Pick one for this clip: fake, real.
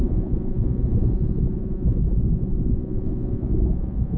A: fake